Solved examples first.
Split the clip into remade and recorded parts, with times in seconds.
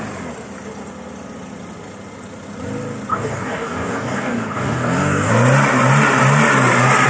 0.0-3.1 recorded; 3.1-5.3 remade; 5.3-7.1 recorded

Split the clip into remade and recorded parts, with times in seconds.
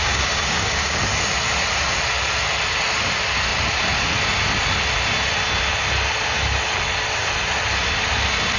0.0-1.0 remade; 1.0-8.6 recorded